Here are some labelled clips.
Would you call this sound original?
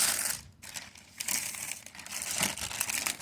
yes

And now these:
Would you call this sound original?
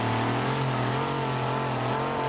yes